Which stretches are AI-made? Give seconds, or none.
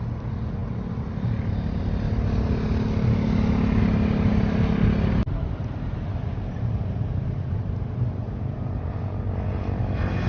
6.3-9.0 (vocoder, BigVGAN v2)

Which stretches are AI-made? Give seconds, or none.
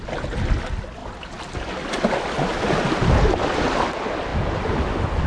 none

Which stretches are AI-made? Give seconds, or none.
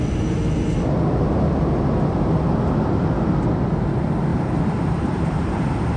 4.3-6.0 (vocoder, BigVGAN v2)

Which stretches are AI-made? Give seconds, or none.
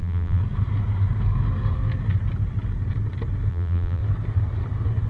0.0-0.4 (vocoder, BigVGAN v2); 3.5-4.0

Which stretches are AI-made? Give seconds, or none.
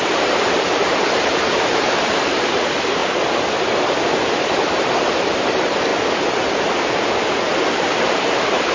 0.0-3.0 (vocoder, BigVGAN v2); 4.6-5.9; 8.1-8.7